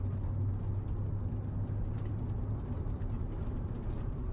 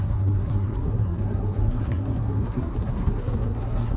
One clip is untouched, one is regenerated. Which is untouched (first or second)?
first